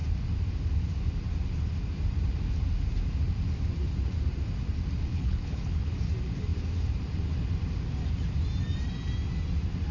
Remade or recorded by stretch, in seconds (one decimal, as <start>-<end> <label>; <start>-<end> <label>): 0.0-5.1 recorded; 5.1-5.9 remade; 5.9-9.9 recorded

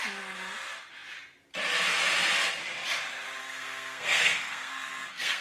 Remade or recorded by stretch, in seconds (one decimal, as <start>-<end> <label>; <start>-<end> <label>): 0.0-3.4 recorded; 3.4-5.4 remade

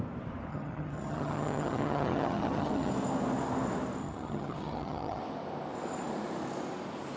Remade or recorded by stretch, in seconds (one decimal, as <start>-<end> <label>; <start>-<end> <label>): 0.0-0.5 recorded; 0.5-2.9 remade; 2.9-4.0 recorded; 4.0-5.2 remade; 5.2-7.2 recorded

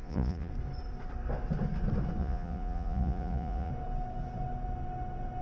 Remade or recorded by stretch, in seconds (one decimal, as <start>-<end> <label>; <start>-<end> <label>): 0.0-0.5 remade; 0.5-2.2 recorded; 2.2-3.7 remade; 3.7-5.4 recorded